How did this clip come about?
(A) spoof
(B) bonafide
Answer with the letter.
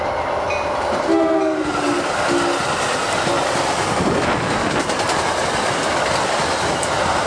B